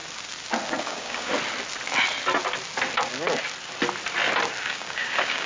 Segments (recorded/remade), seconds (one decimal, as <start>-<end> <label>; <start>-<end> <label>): 0.0-0.8 recorded; 0.8-1.3 remade; 1.3-4.6 recorded; 4.6-5.5 remade